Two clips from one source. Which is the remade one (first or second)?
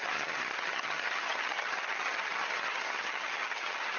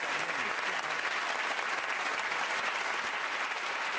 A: first